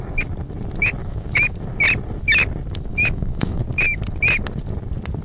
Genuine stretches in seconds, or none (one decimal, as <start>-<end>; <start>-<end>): 0.0-1.0; 1.5-2.9; 3.6-5.2